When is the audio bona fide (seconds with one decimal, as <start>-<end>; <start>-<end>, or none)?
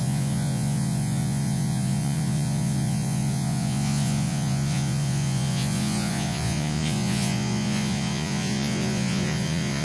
none